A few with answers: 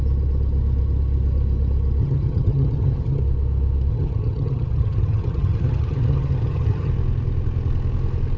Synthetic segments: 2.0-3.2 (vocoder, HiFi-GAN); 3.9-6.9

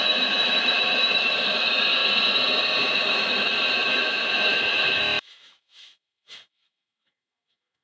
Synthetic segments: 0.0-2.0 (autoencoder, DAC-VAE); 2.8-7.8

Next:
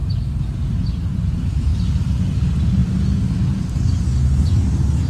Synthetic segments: 0.0-1.7 (vocoder, BigVGAN v2); 2.4-2.8; 4.5-5.1

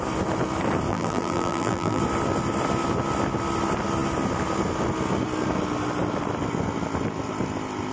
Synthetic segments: 0.9-2.0 (vocoder, BigVGAN v2)

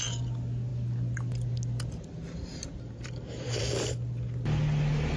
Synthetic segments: none

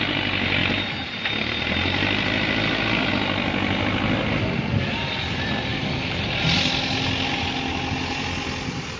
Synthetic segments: none

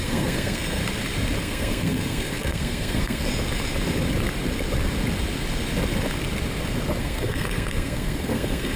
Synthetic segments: 0.0-0.8 (codec, SNAC); 1.4-3.3; 7.0-8.8